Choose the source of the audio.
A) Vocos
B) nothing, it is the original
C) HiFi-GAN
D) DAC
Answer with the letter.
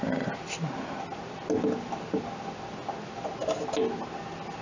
B